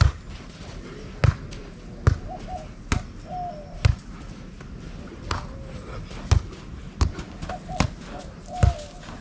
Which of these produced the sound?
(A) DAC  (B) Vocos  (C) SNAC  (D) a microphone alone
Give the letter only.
D